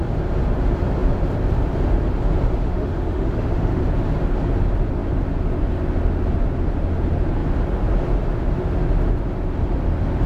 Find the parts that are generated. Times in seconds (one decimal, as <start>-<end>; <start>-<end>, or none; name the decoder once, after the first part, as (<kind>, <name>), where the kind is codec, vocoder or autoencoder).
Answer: 2.6-3.8 (autoencoder, DAC-VAE)